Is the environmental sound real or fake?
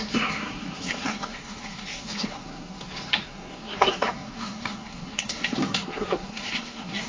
fake